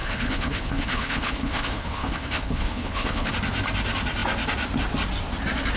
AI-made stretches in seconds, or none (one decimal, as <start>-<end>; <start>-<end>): 0.0-3.3